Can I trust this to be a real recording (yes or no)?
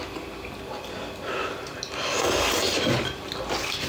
yes